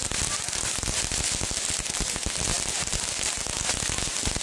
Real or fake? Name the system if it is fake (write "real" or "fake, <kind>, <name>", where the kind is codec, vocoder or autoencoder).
real